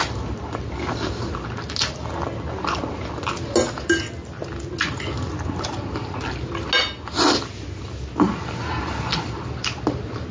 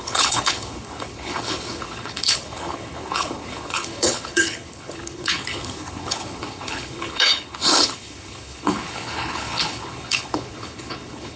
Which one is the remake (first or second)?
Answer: second